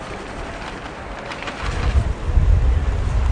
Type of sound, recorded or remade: recorded